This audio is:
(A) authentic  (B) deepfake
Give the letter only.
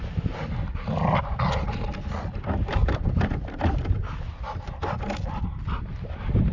A